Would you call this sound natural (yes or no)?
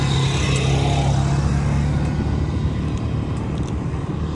yes